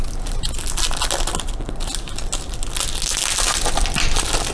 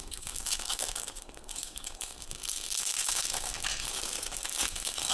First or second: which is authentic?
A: first